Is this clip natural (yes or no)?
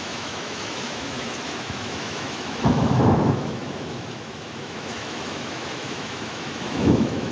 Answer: no